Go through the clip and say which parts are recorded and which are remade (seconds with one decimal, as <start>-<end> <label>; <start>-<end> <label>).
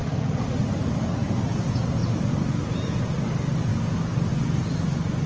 0.0-5.3 recorded